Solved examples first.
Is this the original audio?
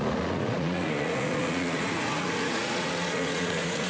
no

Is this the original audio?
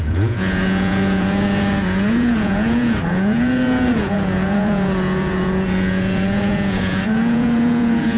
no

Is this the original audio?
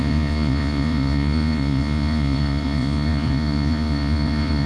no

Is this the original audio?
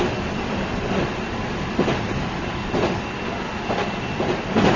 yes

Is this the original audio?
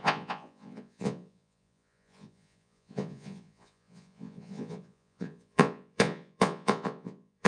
no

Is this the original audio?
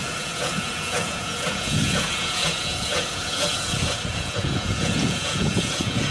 no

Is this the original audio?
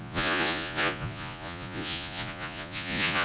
no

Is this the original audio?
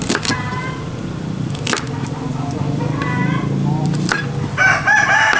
yes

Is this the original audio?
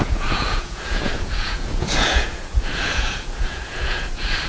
no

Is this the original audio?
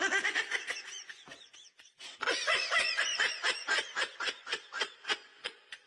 no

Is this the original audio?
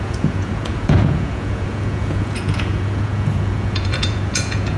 no